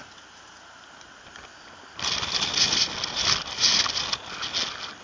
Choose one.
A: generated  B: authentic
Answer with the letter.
B